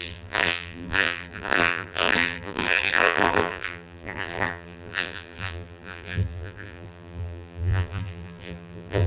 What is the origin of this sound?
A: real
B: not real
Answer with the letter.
B